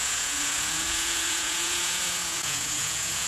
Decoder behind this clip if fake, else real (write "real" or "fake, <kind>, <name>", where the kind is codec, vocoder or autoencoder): fake, vocoder, Vocos